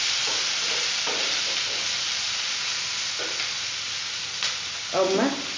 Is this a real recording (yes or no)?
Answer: yes